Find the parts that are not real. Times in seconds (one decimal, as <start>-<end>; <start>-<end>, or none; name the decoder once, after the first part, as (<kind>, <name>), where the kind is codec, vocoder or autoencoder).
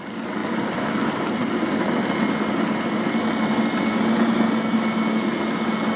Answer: none